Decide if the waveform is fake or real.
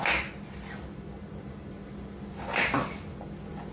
real